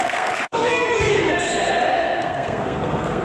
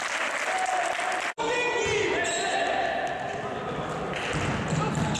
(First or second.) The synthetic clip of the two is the first